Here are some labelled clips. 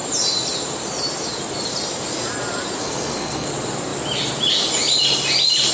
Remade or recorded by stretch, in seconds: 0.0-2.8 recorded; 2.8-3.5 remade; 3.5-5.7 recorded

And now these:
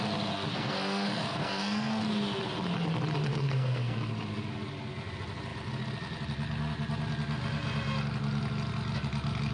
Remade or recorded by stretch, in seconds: 0.0-0.5 recorded; 0.5-2.0 remade; 2.0-3.3 recorded; 3.3-4.1 remade; 4.1-9.5 recorded

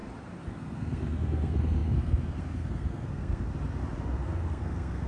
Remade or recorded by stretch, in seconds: 0.0-0.5 recorded; 0.5-3.5 remade; 3.5-4.0 recorded; 4.0-5.1 remade

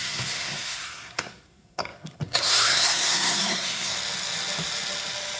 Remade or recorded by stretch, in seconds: 0.0-3.9 remade; 3.9-5.4 recorded

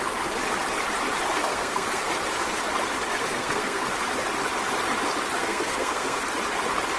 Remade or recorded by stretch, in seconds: 0.0-1.4 recorded; 1.4-2.1 remade; 2.1-3.2 recorded; 3.2-3.9 remade; 3.9-5.4 recorded; 5.4-6.2 remade; 6.2-7.0 recorded

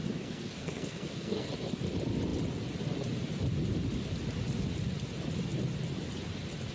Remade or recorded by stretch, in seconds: 0.0-1.5 remade; 1.5-6.7 recorded